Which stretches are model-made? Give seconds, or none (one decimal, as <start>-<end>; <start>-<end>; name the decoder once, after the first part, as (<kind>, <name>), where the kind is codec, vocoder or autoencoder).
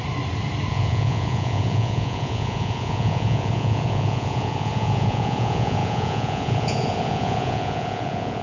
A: 0.7-8.4 (vocoder, Vocos)